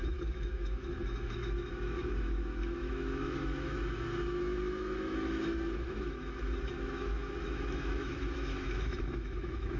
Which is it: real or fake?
fake